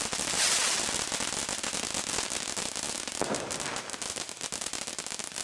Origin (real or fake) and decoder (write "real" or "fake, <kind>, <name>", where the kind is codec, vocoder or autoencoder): real